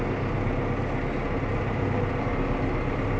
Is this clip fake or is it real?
real